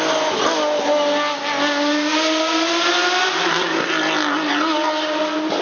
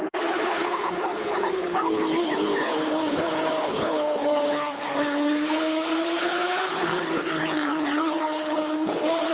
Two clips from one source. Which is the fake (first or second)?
second